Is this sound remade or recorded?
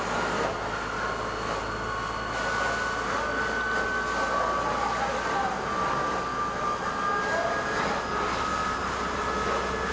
recorded